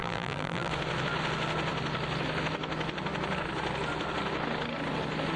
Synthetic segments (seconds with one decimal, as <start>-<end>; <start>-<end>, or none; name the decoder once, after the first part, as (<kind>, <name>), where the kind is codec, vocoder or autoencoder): 0.0-0.7 (vocoder, BigVGAN v2)